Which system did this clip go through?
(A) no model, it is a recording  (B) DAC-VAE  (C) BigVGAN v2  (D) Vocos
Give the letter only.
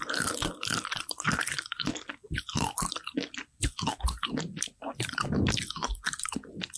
A